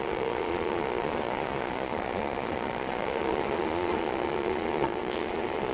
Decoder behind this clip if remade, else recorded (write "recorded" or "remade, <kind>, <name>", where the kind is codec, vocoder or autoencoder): remade, vocoder, Vocos